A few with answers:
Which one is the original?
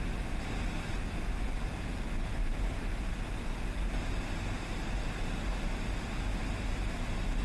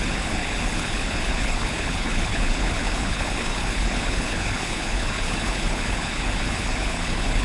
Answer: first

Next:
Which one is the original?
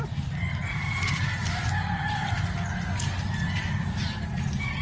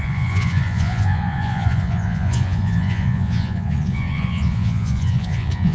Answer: first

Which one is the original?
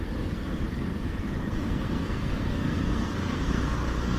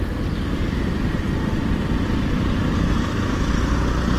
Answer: second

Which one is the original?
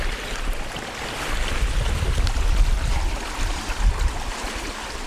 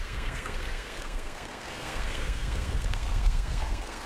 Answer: first